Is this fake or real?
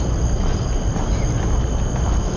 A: real